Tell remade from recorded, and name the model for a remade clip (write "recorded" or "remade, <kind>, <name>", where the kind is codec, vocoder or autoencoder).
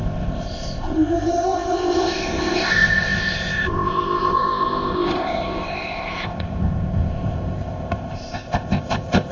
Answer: remade, codec, ZipCodec